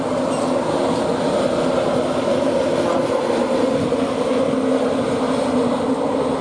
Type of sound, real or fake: real